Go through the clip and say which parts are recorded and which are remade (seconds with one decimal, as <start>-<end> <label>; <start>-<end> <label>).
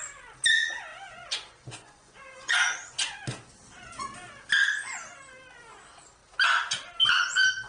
0.0-0.9 recorded; 0.9-3.2 remade; 3.2-7.7 recorded